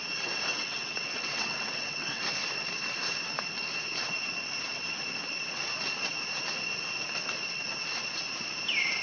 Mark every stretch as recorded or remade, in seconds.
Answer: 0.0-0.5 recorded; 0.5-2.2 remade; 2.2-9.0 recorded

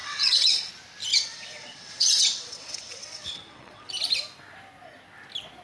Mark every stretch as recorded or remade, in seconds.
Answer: 0.0-0.7 remade; 0.7-1.1 recorded; 1.1-3.9 remade; 3.9-5.6 recorded

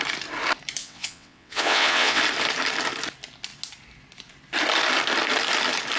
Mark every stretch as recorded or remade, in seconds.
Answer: 0.0-0.8 recorded; 0.8-2.2 remade; 2.2-6.0 recorded

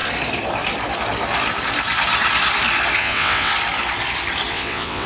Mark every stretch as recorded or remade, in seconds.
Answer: 0.0-3.0 recorded; 3.0-3.5 remade; 3.5-4.5 recorded; 4.5-5.1 remade

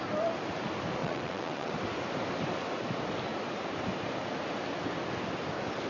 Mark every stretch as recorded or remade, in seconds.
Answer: 0.0-1.0 recorded; 1.0-1.7 remade; 1.7-5.9 recorded

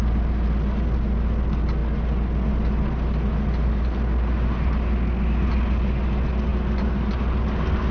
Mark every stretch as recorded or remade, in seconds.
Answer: 0.0-7.9 recorded

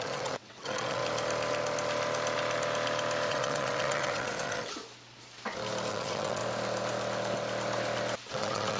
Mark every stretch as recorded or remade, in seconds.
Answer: 0.0-1.0 remade; 1.0-3.3 recorded; 3.3-4.8 remade; 4.8-5.9 recorded; 5.9-6.4 remade; 6.4-8.3 recorded; 8.3-8.8 remade